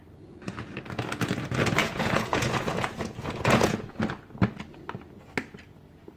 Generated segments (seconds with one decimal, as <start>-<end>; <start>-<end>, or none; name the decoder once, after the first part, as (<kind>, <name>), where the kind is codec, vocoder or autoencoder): 1.8-4.0 (vocoder, Vocos)